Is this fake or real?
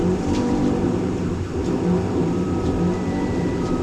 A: fake